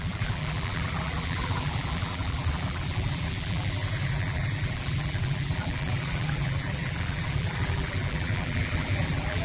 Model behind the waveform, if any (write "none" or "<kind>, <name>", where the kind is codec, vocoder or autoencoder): vocoder, BigVGAN v2